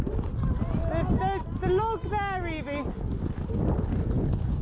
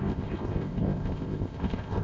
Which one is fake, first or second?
second